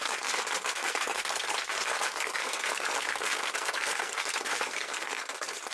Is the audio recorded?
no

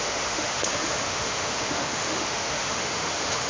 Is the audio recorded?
no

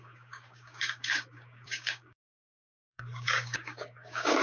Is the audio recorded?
no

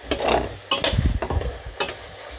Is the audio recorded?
yes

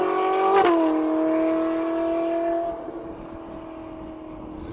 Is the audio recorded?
yes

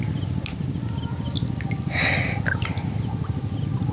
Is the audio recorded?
yes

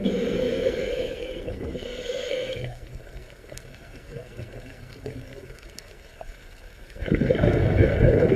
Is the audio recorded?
no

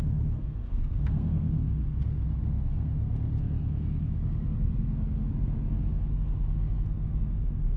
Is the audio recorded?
no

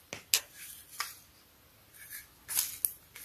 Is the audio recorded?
yes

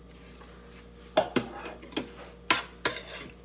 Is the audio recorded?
yes